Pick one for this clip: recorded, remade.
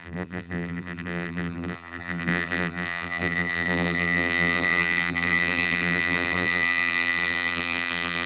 remade